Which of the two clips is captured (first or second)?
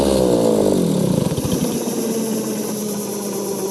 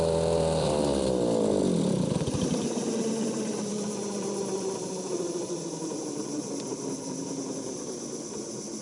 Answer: first